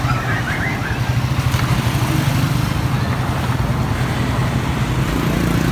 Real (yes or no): yes